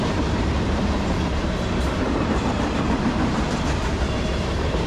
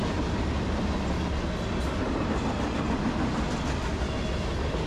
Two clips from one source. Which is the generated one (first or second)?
first